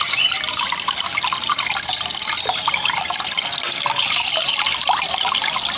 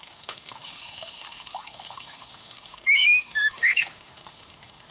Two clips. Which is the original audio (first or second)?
first